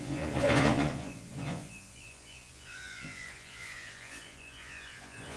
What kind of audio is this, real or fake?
fake